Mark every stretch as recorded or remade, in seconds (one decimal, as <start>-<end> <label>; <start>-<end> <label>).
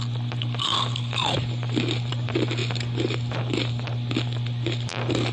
0.0-2.6 remade; 2.6-3.4 recorded; 3.4-5.3 remade